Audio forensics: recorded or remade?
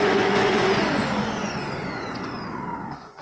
remade